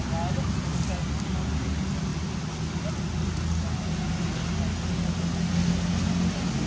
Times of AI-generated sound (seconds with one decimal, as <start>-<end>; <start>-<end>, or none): none